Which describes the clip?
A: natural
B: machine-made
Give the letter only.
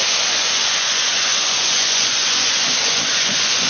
B